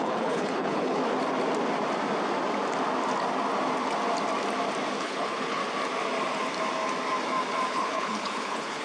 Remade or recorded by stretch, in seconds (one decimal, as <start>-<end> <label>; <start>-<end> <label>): 0.0-1.0 remade; 1.0-5.0 recorded; 5.0-5.6 remade; 5.6-7.7 recorded; 7.7-8.8 remade